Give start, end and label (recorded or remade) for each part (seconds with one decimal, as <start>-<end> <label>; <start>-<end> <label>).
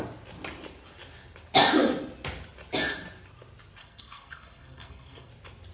0.0-3.8 recorded; 3.8-5.3 remade; 5.3-5.7 recorded